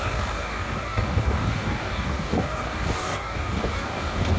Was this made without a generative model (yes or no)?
no